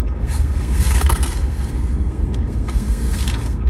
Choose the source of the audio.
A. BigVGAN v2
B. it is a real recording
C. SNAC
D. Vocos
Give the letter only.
C